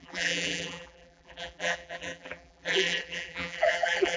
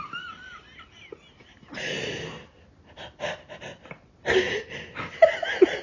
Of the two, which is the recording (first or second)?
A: second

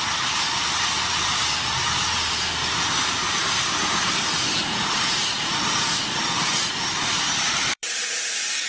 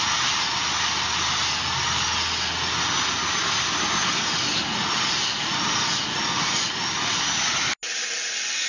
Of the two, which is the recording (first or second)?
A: second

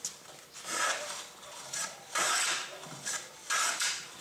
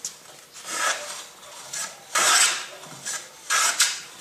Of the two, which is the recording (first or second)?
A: second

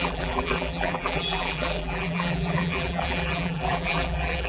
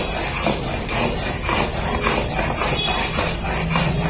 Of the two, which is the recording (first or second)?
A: second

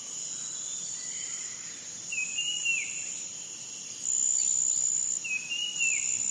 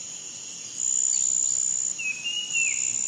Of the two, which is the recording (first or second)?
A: second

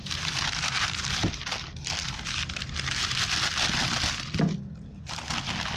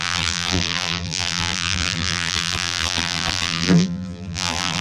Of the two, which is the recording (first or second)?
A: first